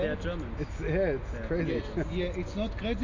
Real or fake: real